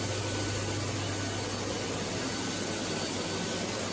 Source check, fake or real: real